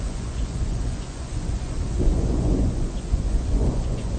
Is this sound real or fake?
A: fake